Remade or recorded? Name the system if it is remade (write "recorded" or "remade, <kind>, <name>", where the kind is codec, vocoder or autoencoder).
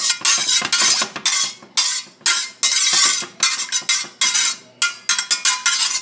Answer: recorded